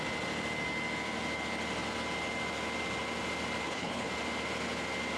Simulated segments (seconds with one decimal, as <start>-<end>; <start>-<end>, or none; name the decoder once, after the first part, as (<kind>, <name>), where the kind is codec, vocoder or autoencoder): 3.6-4.1 (codec, HILCodec)

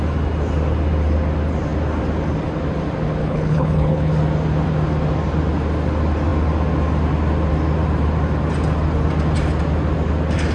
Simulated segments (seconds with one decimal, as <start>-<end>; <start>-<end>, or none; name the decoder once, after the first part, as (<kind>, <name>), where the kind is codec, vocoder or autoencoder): 3.2-4.1 (codec, HILCodec)

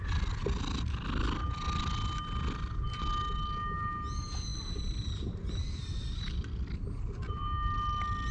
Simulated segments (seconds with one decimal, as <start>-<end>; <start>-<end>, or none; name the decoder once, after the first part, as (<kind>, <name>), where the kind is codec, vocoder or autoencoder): none

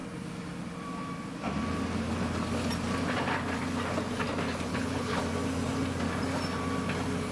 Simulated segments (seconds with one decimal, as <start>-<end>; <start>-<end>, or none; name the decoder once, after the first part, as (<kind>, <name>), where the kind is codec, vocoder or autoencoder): 4.7-5.2 (codec, HILCodec)

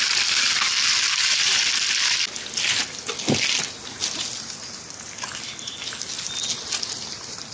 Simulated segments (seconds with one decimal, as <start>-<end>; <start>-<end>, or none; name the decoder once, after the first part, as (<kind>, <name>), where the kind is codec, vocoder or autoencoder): none

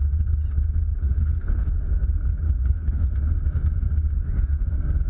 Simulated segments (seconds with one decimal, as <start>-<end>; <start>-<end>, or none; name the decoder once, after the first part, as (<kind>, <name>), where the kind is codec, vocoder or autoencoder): 0.9-1.7 (codec, HILCodec); 2.6-3.1